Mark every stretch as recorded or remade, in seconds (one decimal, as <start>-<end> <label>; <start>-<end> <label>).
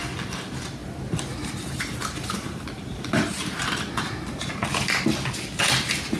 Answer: 0.0-0.8 recorded; 0.8-4.5 remade; 4.5-6.2 recorded